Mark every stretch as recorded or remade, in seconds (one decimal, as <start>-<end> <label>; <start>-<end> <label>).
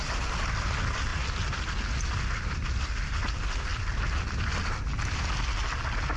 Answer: 0.0-6.2 recorded